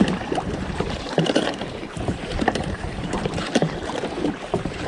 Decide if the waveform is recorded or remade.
remade